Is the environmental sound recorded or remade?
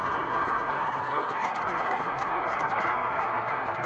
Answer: remade